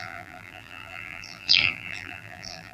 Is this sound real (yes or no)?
no